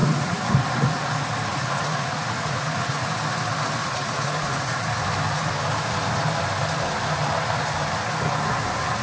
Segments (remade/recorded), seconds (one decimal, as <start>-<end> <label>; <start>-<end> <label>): 0.0-0.5 remade; 0.5-1.5 recorded; 1.5-3.1 remade; 3.1-3.8 recorded; 3.8-4.8 remade; 4.8-9.0 recorded